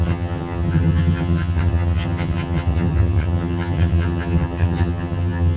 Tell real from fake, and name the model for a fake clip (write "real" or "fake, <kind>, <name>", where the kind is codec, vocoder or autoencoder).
fake, vocoder, HiFi-GAN